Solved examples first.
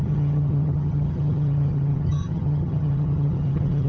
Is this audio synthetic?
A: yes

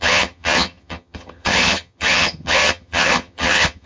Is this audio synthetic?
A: yes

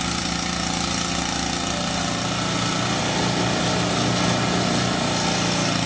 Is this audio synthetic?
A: no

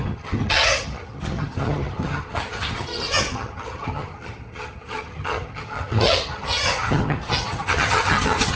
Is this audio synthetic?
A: yes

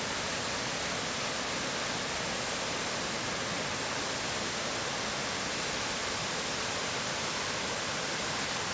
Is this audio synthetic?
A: no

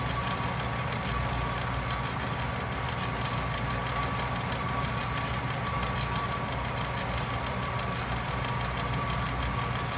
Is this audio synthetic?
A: no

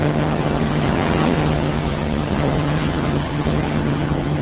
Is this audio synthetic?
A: yes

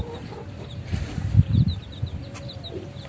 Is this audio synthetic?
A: no